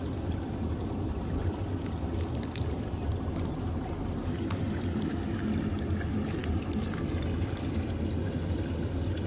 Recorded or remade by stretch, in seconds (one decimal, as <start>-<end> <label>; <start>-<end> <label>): 0.0-9.3 recorded